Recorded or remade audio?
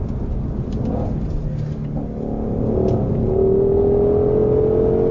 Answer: recorded